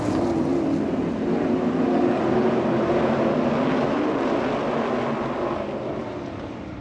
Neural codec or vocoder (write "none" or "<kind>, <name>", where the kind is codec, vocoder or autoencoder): none